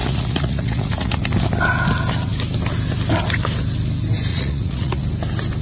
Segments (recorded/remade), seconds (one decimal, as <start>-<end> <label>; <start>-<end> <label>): 0.0-1.2 remade; 1.2-4.3 recorded; 4.3-5.0 remade; 5.0-5.6 recorded